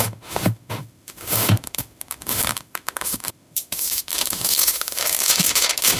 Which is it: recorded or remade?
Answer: remade